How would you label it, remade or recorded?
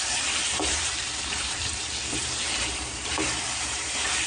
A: remade